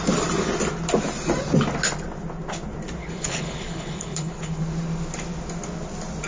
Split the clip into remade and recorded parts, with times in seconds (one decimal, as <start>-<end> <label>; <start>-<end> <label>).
0.0-3.0 recorded; 3.0-4.6 remade; 4.6-6.3 recorded